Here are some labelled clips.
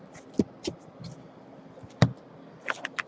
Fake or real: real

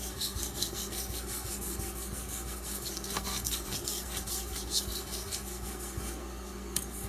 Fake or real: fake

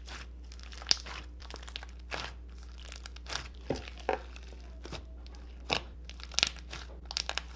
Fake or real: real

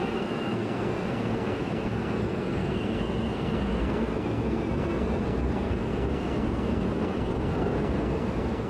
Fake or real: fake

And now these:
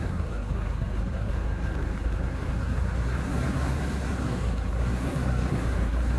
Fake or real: fake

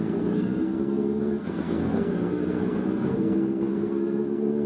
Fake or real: fake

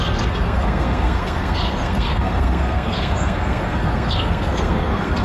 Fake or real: fake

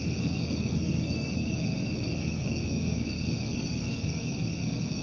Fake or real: fake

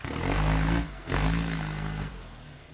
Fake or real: fake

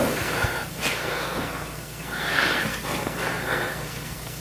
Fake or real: fake